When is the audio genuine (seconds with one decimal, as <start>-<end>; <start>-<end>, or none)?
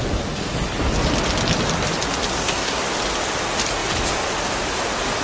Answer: 0.0-2.3; 2.8-5.2